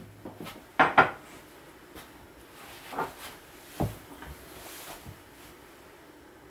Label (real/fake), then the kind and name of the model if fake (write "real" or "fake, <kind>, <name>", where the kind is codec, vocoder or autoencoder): real